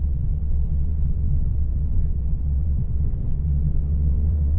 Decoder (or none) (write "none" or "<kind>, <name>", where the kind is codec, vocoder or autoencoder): vocoder, WaveNeXt